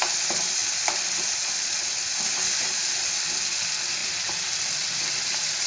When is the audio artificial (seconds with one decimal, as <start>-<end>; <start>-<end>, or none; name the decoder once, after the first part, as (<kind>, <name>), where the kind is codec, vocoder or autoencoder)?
0.6-1.8 (vocoder, BigVGAN v2); 4.0-5.7